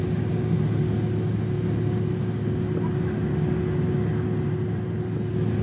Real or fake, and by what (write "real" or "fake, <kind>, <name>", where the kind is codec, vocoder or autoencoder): real